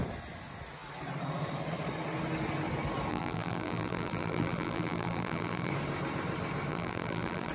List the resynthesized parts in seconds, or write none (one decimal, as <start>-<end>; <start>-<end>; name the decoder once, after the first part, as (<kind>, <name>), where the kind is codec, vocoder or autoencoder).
3.1-5.7 (vocoder, BigVGAN v2); 6.7-7.5